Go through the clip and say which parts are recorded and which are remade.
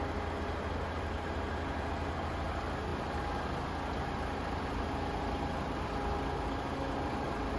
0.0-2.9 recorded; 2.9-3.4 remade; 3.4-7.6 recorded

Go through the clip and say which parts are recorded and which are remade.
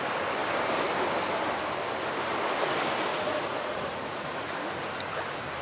0.0-3.1 recorded; 3.1-4.8 remade; 4.8-5.6 recorded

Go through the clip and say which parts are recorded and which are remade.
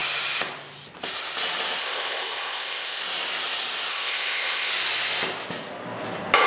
0.0-1.8 recorded; 1.8-3.0 remade; 3.0-3.9 recorded; 3.9-4.7 remade; 4.7-6.5 recorded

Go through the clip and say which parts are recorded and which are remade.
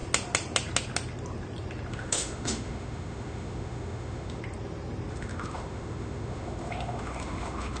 0.0-1.9 recorded; 1.9-4.4 remade; 4.4-5.1 recorded; 5.1-7.8 remade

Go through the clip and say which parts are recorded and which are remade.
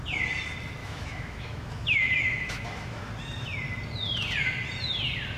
0.0-0.8 recorded; 0.8-3.1 remade; 3.1-5.4 recorded